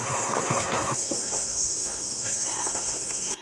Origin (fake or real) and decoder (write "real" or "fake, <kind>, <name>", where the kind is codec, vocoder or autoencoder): fake, codec, SNAC